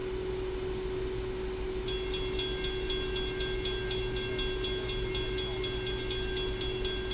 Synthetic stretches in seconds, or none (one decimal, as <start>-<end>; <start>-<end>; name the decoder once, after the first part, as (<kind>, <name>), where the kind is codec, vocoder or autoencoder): none